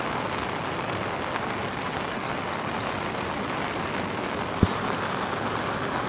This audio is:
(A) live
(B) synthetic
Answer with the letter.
A